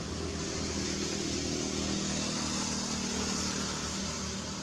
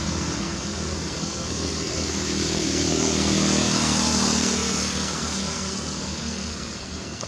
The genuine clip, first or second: first